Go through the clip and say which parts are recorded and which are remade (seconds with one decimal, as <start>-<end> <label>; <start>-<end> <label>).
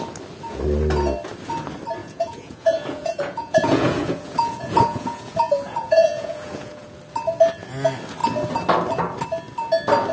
0.0-2.0 recorded; 2.0-6.9 remade; 6.9-10.1 recorded